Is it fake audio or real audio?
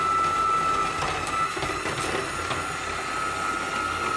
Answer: real